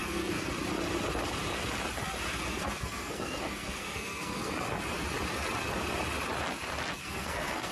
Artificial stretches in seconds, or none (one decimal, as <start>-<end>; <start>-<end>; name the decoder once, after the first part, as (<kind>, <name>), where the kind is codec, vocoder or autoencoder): 0.0-0.5 (codec, SNAC); 2.5-4.5; 6.9-7.7